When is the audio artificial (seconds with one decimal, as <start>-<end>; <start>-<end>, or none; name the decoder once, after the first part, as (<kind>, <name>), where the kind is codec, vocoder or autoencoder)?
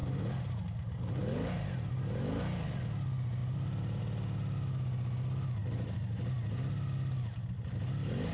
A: 3.4-4.0 (vocoder, BigVGAN v2); 5.6-6.3